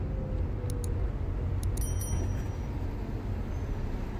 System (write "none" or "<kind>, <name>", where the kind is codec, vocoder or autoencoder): none